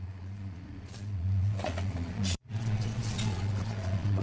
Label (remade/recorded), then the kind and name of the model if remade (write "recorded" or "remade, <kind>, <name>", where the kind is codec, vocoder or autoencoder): remade, vocoder, Vocos